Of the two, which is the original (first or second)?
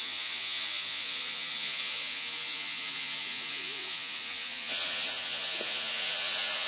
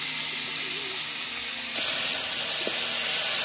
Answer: second